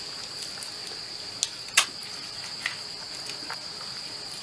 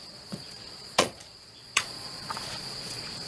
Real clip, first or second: first